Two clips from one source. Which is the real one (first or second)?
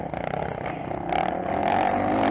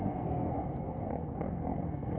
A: first